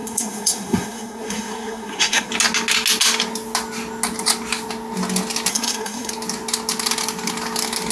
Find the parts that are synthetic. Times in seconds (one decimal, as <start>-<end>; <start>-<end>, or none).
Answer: 0.0-2.3; 5.5-6.1